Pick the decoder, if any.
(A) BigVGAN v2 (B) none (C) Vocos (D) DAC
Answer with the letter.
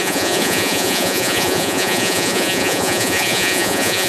C